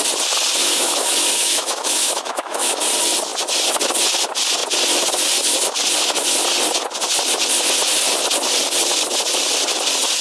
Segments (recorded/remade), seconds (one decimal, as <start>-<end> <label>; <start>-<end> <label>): 0.0-0.6 recorded; 0.6-2.8 remade; 2.8-10.2 recorded